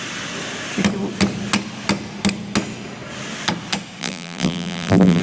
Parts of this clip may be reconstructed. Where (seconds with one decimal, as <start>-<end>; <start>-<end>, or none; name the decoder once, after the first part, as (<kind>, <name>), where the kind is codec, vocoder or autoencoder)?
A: 4.0-5.2 (vocoder, BigVGAN v2)